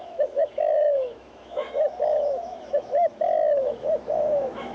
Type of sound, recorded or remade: remade